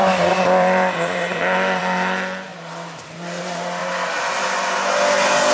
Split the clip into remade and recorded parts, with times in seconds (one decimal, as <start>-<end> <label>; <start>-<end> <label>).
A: 0.0-1.8 remade; 1.8-2.5 recorded; 2.5-3.4 remade; 3.4-5.5 recorded